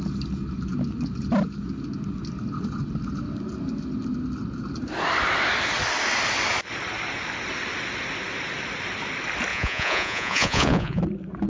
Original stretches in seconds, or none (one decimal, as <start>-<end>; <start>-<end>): 0.0-9.5; 11.0-11.5